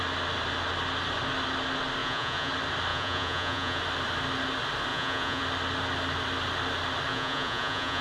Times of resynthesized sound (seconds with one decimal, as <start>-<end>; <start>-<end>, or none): 2.0-2.5; 2.9-3.8; 4.9-5.4; 7.1-8.0

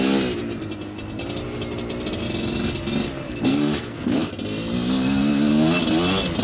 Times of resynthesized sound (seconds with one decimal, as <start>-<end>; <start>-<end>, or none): 3.5-4.3

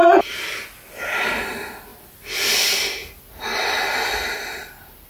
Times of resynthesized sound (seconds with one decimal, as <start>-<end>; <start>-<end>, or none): none

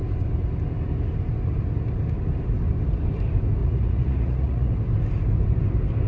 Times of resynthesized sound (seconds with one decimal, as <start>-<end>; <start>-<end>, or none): 3.6-4.7

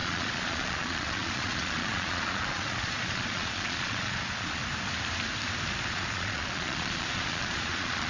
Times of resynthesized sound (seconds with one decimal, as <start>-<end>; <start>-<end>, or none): 0.0-4.6; 5.9-8.1